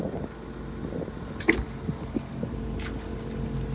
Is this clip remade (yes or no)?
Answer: no